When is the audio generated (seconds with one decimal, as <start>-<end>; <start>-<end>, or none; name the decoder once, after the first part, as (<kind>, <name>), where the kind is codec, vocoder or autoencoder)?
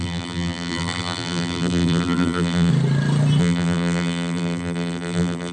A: 0.0-2.7 (vocoder, BigVGAN v2); 3.4-5.5